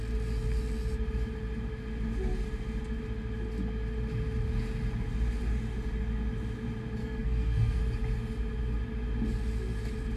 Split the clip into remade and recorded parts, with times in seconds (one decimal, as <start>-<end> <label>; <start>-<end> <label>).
0.0-7.0 recorded; 7.0-7.8 remade; 7.8-10.2 recorded